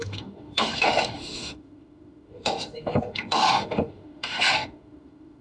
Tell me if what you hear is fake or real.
fake